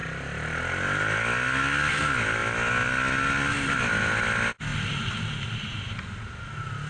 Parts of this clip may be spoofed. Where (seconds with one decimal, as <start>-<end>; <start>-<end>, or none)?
none